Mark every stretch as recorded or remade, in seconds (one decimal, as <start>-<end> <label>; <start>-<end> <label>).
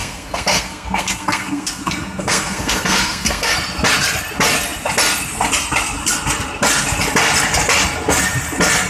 0.0-3.5 remade; 3.5-8.9 recorded